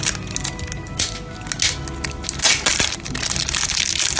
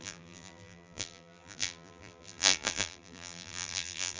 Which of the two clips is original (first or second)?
first